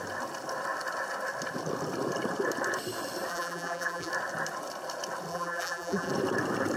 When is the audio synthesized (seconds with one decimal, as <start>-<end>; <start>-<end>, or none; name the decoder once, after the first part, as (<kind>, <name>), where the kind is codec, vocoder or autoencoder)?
3.3-4.1 (vocoder, BigVGAN v2); 5.3-6.1